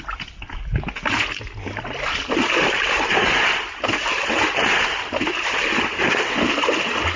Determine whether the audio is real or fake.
real